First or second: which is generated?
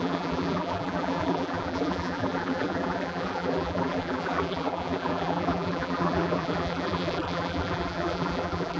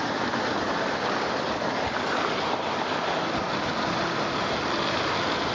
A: first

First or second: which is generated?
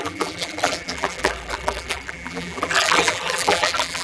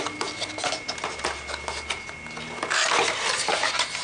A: first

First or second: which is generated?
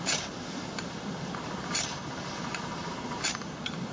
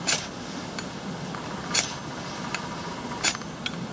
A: first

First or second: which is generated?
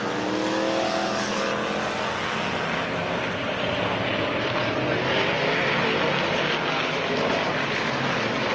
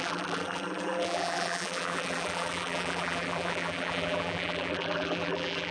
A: second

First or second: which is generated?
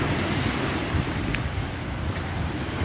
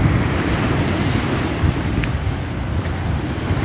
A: first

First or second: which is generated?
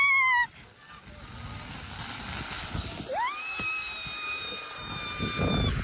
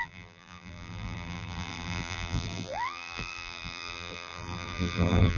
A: second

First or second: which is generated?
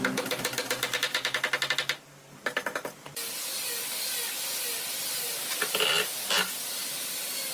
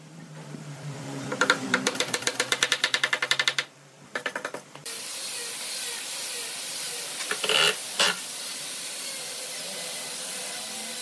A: second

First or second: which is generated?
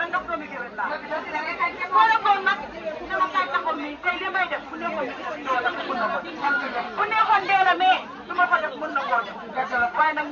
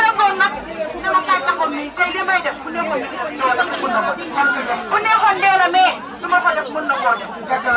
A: first